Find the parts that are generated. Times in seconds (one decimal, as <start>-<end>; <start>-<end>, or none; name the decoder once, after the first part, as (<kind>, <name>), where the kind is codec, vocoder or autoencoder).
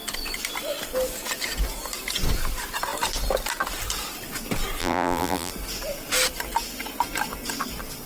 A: 4.8-5.5 (vocoder, BigVGAN v2)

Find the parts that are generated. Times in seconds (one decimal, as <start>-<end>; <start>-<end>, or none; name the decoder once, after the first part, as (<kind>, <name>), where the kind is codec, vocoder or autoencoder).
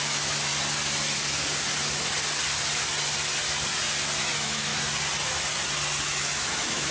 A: 0.0-0.5 (autoencoder, DAC-VAE); 4.2-4.7; 6.0-6.9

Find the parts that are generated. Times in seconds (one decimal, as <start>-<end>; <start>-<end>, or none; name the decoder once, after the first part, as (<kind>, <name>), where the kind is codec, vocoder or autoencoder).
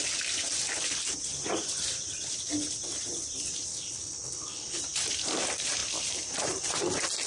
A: 3.7-4.8 (codec, HILCodec)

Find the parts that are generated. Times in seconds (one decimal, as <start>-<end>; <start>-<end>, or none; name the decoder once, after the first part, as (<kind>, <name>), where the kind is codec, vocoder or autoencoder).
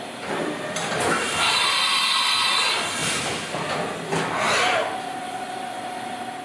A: none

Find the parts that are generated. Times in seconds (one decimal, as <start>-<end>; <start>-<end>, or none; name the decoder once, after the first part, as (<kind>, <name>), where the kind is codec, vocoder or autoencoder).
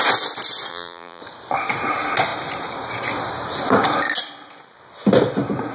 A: 0.7-1.2 (vocoder, BigVGAN v2)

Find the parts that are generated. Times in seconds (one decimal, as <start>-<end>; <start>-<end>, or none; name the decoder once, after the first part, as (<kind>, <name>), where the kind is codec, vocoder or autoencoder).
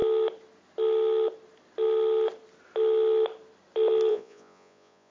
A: 4.1-5.1 (vocoder, Vocos)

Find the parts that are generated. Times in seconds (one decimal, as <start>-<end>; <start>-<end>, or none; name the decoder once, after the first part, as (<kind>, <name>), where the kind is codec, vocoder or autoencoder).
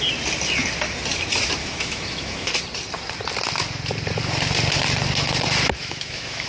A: 1.6-2.5 (autoencoder, DAC-VAE); 5.8-6.5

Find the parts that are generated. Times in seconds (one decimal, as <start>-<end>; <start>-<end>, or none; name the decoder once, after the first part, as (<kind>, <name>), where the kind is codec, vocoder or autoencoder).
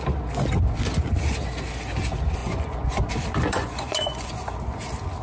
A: 2.4-3.1 (vocoder, Vocos); 3.6-4.3